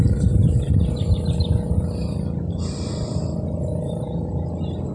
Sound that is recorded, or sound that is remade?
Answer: recorded